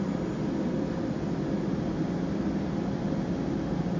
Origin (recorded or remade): recorded